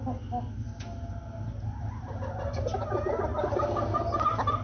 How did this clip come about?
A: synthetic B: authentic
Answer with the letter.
B